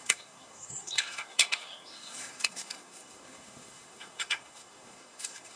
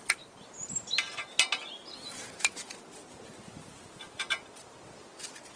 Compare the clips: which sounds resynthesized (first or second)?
first